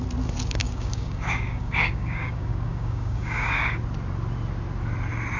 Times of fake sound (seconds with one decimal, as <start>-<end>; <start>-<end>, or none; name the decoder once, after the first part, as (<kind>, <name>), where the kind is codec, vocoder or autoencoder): 0.6-3.8 (codec, DAC)